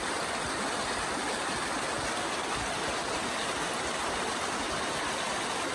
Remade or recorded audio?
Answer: recorded